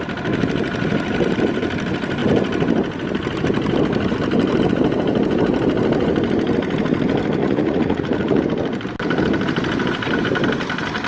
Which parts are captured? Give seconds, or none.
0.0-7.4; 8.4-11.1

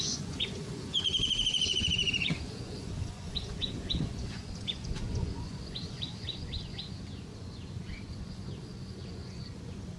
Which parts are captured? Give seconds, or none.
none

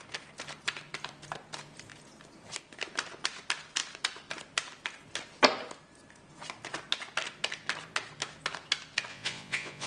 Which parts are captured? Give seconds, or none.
0.0-9.1

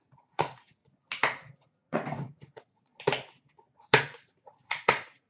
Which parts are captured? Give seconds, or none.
0.8-1.5; 2.9-4.0

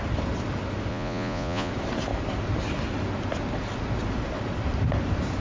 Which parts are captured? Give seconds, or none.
0.0-0.9; 1.7-5.4

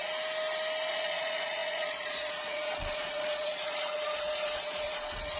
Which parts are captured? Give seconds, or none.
0.0-0.9